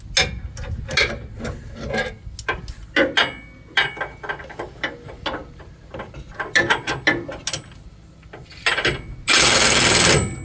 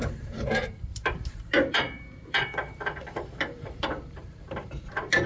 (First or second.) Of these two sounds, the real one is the first